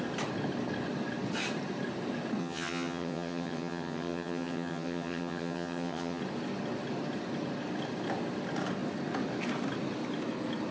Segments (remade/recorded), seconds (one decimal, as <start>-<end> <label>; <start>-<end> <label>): 0.0-2.4 recorded; 2.4-6.2 remade; 6.2-10.7 recorded